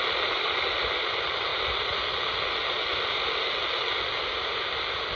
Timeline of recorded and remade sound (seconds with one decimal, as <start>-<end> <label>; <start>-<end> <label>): 0.0-1.5 remade; 1.5-3.9 recorded; 3.9-5.2 remade